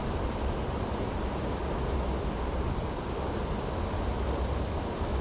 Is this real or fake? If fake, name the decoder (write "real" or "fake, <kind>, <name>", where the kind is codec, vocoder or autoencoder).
real